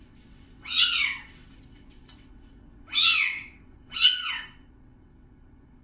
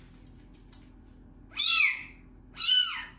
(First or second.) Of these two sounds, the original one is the second